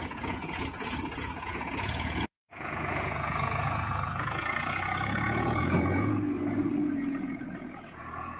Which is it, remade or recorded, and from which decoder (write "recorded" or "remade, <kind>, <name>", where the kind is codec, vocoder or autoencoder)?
remade, vocoder, Vocos